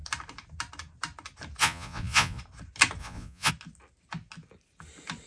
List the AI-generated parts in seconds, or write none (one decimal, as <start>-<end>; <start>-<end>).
1.6-2.4; 3.0-3.5